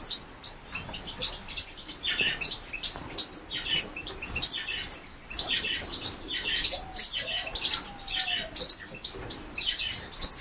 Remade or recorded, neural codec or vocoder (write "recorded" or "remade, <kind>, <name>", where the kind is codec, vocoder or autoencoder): recorded